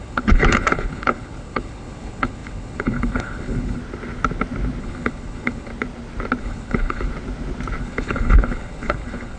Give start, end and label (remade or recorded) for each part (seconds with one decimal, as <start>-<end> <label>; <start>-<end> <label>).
0.0-3.8 remade; 3.8-4.8 recorded; 4.8-5.7 remade; 5.7-6.4 recorded; 6.4-7.1 remade; 7.1-7.8 recorded; 7.8-9.4 remade

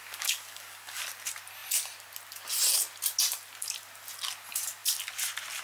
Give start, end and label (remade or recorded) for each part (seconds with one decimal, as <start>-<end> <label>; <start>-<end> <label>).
0.0-1.0 remade; 1.0-5.6 recorded

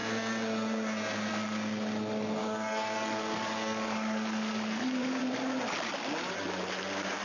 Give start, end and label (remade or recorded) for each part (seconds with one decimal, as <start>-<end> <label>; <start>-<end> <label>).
0.0-2.4 recorded; 2.4-5.2 remade; 5.2-7.2 recorded

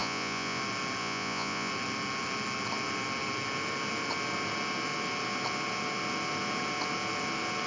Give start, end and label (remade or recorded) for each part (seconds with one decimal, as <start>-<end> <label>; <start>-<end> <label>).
0.0-0.6 remade; 0.6-1.0 recorded; 1.0-1.7 remade; 1.7-7.7 recorded

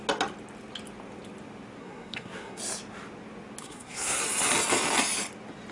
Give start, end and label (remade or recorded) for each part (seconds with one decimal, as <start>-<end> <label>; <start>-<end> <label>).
0.0-1.8 recorded; 1.8-2.6 remade; 2.6-3.6 recorded; 3.6-4.2 remade; 4.2-5.7 recorded